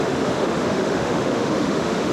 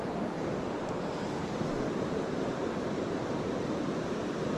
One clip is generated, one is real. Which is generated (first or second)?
first